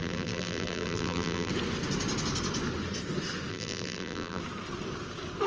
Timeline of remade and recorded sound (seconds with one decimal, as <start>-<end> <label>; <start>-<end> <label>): 0.0-1.5 remade; 1.5-3.5 recorded; 3.5-4.4 remade; 4.4-5.5 recorded